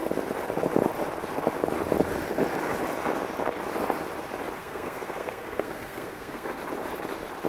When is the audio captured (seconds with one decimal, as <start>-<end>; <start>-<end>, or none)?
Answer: 0.0-4.6; 6.6-7.5

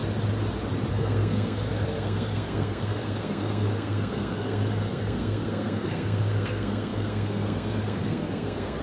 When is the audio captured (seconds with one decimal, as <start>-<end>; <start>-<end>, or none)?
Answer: 0.0-0.9

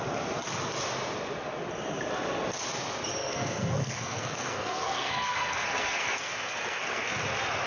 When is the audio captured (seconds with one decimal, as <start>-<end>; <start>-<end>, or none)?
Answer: 0.0-3.2; 7.1-7.7

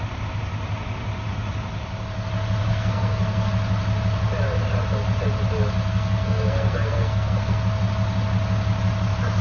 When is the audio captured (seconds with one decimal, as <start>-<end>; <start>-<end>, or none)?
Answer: 0.0-2.7; 3.5-5.9; 7.6-9.4

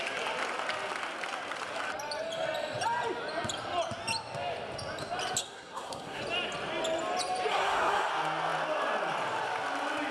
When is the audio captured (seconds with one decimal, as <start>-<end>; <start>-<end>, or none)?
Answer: 0.0-5.4; 6.2-7.5; 8.1-10.1

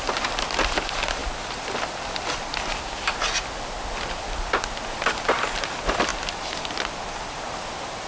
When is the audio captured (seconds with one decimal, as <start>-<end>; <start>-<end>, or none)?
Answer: 0.0-8.1